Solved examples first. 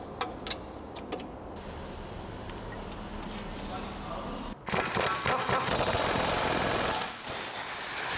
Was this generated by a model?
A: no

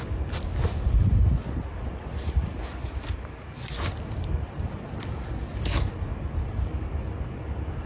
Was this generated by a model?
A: no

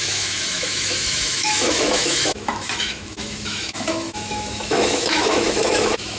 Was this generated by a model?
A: yes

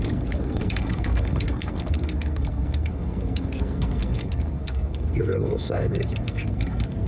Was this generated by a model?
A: yes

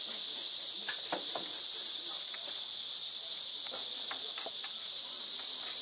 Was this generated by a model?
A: no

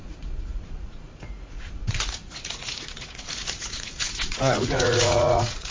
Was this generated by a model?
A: yes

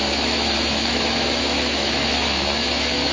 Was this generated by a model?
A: yes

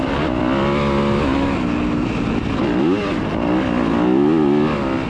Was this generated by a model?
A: no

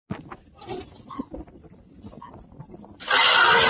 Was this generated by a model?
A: no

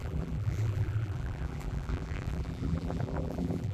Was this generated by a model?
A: yes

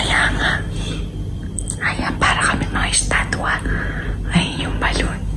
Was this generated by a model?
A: no